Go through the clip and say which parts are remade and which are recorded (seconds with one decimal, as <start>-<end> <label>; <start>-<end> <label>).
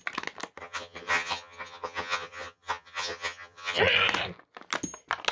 0.0-0.6 recorded; 0.6-3.8 remade; 3.8-5.3 recorded